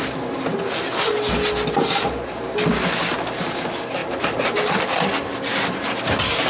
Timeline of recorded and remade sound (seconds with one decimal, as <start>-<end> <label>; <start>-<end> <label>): 0.0-4.0 recorded; 4.0-5.0 remade; 5.0-6.5 recorded